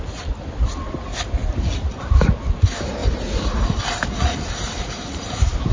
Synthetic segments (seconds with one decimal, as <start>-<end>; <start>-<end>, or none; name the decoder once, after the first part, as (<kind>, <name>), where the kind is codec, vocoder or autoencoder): none